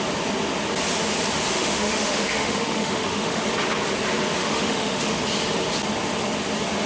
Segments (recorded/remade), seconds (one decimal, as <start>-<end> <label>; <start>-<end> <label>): 0.0-1.5 recorded; 1.5-3.4 remade; 3.4-4.4 recorded; 4.4-5.2 remade; 5.2-6.9 recorded